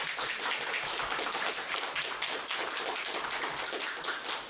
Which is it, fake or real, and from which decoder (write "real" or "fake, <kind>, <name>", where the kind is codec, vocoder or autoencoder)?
real